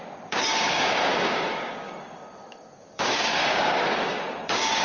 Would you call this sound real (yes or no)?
no